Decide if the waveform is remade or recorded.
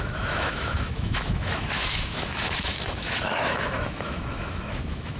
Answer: remade